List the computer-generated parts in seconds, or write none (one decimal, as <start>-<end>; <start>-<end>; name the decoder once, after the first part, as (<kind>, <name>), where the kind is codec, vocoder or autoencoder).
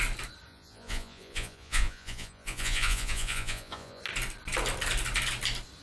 0.5-4.0 (vocoder, Vocos)